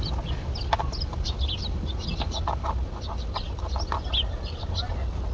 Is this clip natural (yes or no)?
yes